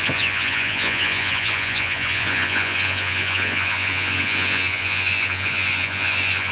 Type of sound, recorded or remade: remade